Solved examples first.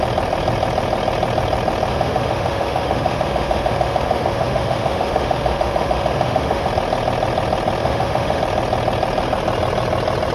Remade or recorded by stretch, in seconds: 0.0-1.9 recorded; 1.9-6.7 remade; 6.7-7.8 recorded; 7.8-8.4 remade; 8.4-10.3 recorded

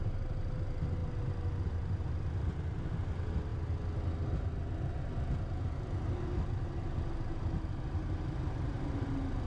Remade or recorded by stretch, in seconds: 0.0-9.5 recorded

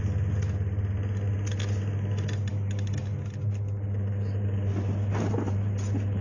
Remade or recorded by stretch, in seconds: 0.0-2.5 recorded; 2.5-3.0 remade; 3.0-6.2 recorded

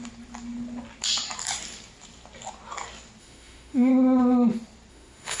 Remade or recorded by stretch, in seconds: 0.0-3.2 recorded; 3.2-3.9 remade; 3.9-4.9 recorded; 4.9-5.4 remade